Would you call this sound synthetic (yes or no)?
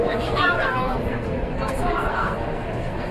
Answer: yes